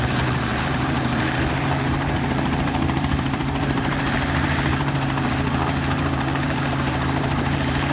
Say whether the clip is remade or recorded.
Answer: remade